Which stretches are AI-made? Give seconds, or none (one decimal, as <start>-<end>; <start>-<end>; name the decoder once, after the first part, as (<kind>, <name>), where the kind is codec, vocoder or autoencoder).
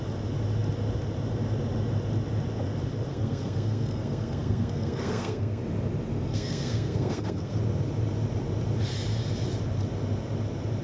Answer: 3.1-5.6 (codec, SNAC); 6.3-7.6